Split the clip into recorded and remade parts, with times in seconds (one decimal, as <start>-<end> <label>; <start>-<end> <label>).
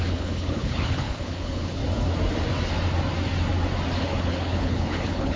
0.0-1.8 remade; 1.8-4.0 recorded; 4.0-5.4 remade